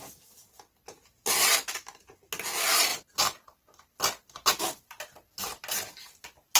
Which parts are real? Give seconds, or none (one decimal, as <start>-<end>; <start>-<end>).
2.0-2.9